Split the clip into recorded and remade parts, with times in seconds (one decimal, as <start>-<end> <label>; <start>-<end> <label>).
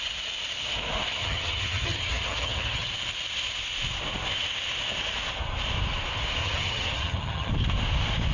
0.0-1.2 recorded; 1.2-2.9 remade; 2.9-6.4 recorded; 6.4-7.5 remade; 7.5-8.3 recorded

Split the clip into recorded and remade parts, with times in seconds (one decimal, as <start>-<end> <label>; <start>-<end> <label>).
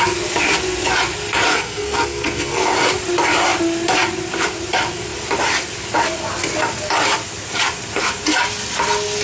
0.0-1.5 recorded; 1.5-2.7 remade; 2.7-9.2 recorded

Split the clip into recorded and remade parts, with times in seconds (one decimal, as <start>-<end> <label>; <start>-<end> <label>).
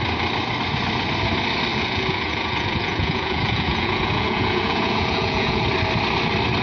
0.0-1.7 recorded; 1.7-5.6 remade; 5.6-6.6 recorded